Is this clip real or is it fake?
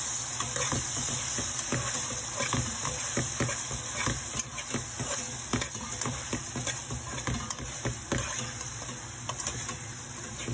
real